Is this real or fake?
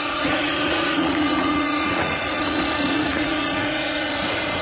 fake